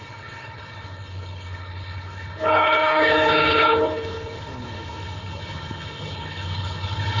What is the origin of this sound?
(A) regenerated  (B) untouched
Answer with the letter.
A